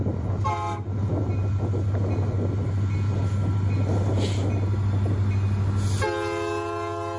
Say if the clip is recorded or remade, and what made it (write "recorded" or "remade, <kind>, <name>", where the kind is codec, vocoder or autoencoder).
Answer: recorded